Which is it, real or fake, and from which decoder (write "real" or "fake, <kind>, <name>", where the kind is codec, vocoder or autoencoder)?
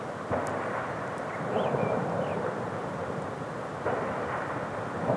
fake, vocoder, BigVGAN v2